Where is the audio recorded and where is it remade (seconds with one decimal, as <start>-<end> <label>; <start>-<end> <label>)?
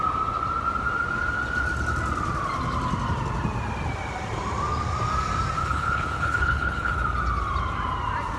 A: 0.0-5.6 recorded; 5.6-6.9 remade; 6.9-8.4 recorded